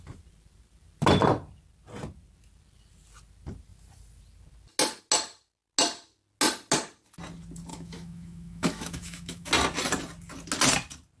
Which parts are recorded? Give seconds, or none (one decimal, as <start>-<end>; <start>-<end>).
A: 0.0-7.7; 9.5-11.2